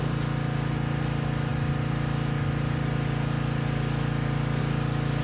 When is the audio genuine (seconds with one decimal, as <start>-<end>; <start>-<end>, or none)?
0.0-5.2